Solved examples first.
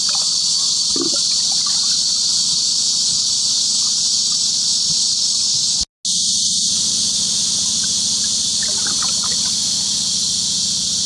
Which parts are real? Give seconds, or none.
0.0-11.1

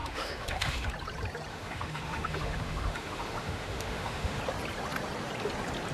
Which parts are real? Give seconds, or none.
0.9-1.5; 4.4-5.9

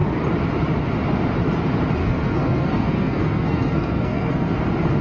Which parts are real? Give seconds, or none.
0.0-2.0; 4.6-5.0

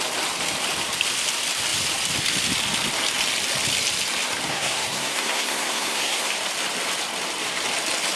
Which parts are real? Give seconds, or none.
0.0-4.5; 6.3-8.2

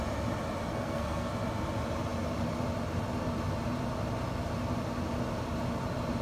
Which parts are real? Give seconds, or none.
0.0-0.6; 1.3-6.2

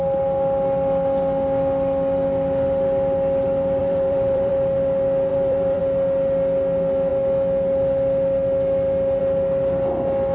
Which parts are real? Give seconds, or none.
0.0-3.8; 4.5-5.3; 5.8-10.3